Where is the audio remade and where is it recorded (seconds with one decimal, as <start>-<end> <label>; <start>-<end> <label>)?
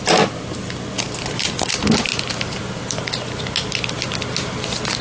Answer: 0.0-5.0 recorded